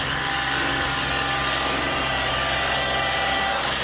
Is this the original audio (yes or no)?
no